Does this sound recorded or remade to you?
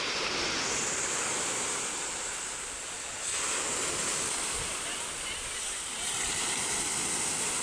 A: recorded